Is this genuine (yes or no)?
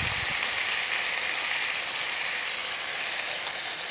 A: yes